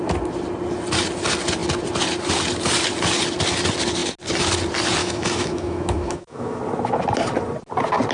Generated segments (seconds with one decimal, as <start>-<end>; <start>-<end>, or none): 5.0-6.6